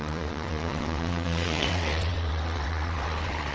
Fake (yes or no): yes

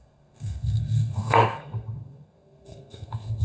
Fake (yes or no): yes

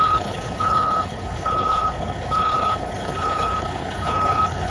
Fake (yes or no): yes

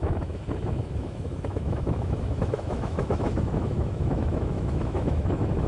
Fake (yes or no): yes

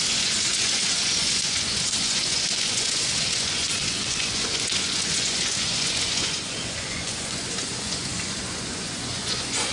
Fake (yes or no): yes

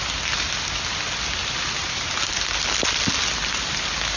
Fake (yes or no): no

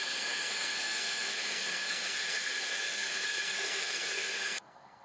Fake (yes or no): yes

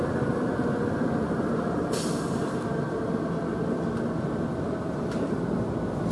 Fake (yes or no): no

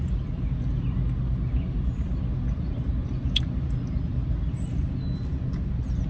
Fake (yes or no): no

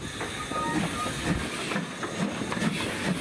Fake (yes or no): no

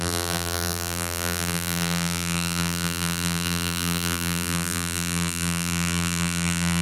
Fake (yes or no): yes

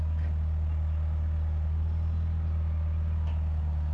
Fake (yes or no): no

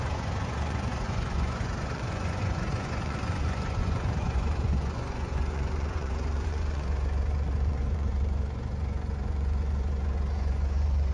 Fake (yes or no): yes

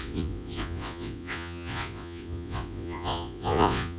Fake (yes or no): yes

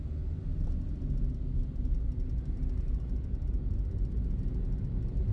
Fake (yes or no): no